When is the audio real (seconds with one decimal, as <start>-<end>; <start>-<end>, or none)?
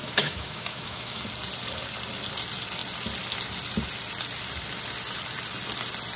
1.2-6.2